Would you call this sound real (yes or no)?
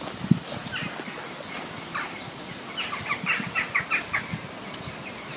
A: yes